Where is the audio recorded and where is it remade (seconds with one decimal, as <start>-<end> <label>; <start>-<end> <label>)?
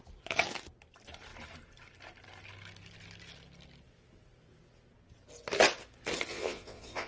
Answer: 0.0-6.3 recorded; 6.3-7.1 remade